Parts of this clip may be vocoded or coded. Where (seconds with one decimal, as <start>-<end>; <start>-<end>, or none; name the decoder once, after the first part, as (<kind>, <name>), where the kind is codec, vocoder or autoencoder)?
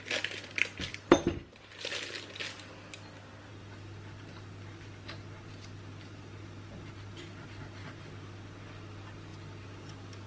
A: none